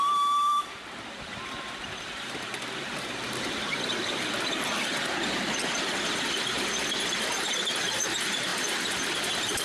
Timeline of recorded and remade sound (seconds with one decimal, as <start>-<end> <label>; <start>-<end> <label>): 0.0-9.6 recorded